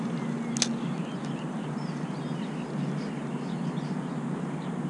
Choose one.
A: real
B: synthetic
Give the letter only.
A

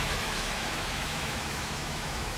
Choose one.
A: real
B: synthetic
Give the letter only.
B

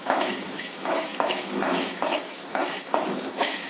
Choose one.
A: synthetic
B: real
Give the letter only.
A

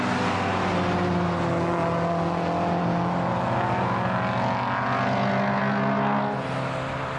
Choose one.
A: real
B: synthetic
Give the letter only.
A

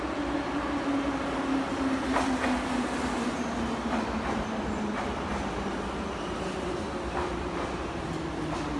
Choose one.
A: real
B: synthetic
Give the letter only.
A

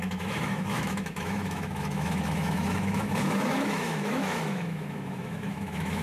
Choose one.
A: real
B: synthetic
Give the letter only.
B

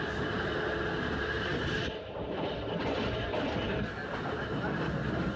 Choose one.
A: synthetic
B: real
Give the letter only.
B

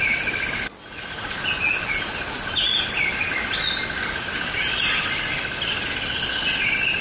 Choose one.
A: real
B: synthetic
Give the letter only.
A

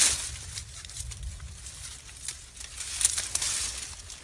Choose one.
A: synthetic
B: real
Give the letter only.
B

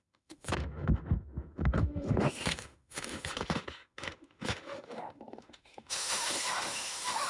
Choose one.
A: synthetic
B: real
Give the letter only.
A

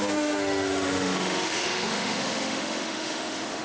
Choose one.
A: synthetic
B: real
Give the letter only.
A